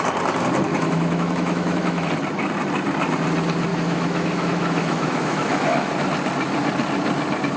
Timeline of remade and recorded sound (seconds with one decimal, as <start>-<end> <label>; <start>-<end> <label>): 0.0-0.7 recorded; 0.7-2.1 remade; 2.1-3.7 recorded; 3.7-5.9 remade; 5.9-7.6 recorded